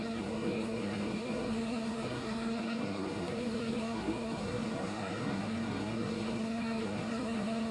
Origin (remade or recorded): remade